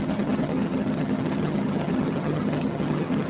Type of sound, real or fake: fake